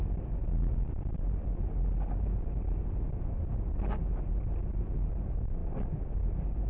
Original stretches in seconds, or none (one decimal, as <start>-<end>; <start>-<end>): 0.0-6.7